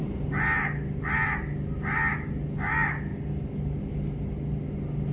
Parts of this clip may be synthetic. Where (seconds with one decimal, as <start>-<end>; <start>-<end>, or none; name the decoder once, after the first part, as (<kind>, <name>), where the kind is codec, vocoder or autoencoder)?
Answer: none